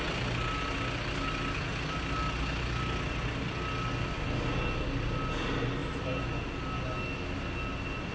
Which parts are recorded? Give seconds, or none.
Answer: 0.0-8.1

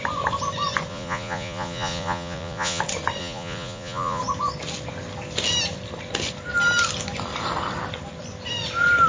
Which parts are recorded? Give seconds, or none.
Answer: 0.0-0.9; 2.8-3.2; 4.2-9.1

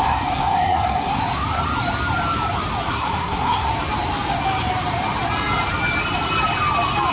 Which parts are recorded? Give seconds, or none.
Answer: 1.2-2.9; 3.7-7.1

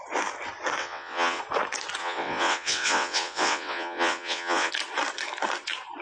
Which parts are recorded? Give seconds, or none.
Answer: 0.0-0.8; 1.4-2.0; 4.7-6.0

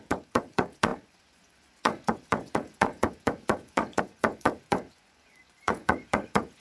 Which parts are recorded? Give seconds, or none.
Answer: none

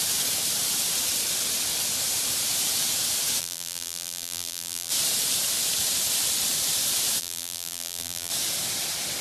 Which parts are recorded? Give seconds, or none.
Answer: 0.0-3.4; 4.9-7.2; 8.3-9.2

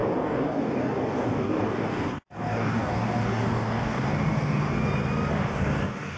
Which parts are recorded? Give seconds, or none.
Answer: 4.8-5.3

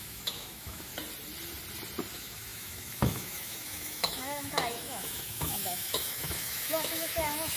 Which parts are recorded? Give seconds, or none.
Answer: 0.9-2.1